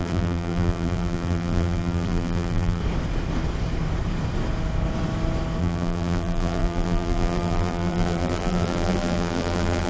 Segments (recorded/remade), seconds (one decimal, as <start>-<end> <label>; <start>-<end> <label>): 0.0-2.8 remade; 2.8-5.6 recorded; 5.6-9.9 remade